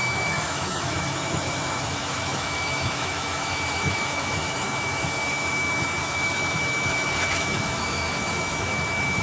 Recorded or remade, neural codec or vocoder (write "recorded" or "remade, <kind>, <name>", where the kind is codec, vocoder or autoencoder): remade, autoencoder, DAC-VAE